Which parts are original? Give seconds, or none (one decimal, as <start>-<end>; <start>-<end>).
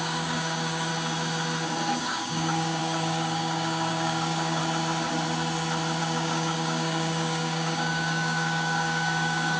0.9-2.0; 4.6-6.0